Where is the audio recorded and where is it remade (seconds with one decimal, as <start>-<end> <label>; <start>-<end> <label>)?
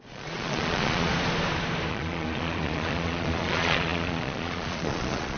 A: 0.0-1.1 remade; 1.1-1.9 recorded; 1.9-5.4 remade